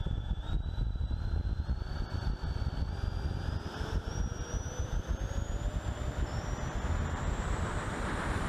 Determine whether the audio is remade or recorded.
recorded